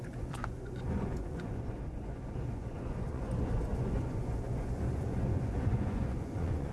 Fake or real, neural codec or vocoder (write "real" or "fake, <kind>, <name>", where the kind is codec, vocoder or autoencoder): fake, vocoder, Vocos